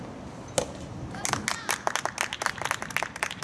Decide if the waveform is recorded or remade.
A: recorded